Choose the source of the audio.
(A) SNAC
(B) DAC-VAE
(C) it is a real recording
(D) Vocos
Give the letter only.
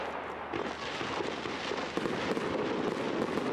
C